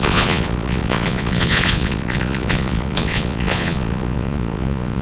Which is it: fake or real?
fake